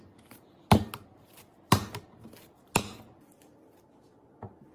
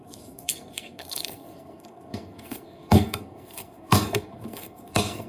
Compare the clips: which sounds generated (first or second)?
second